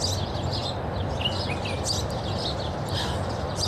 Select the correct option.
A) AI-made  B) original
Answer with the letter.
B